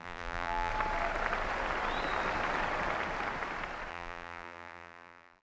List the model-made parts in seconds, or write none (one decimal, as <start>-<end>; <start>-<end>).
0.0-0.7; 3.9-5.4